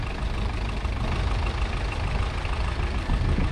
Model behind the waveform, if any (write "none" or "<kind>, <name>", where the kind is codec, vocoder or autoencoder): none